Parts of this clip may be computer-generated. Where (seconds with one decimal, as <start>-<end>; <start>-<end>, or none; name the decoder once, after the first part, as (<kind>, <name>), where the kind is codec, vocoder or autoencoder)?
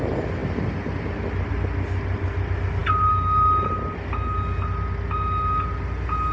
none